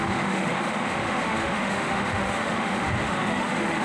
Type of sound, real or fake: fake